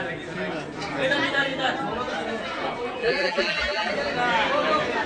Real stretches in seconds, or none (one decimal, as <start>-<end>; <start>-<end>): 0.0-3.0; 3.9-5.1